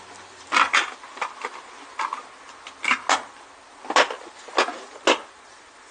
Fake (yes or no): no